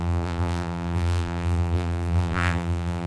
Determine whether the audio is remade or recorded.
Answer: remade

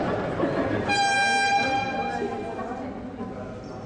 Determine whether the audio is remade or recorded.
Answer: recorded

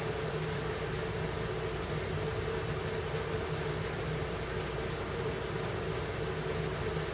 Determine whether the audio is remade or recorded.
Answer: recorded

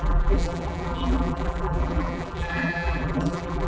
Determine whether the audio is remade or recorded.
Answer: remade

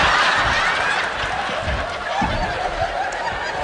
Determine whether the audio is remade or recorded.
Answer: recorded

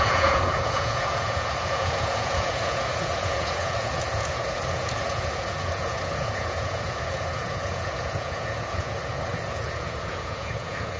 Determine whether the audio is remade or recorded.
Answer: remade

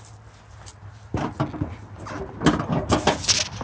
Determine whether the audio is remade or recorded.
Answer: recorded